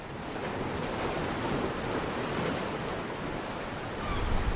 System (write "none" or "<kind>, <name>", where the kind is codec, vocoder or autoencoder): none